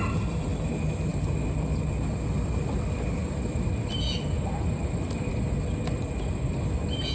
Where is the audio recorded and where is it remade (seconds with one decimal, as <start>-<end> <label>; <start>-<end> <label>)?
0.0-7.1 recorded